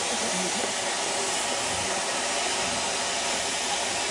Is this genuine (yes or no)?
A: yes